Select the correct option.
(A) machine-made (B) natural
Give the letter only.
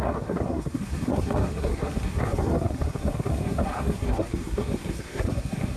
A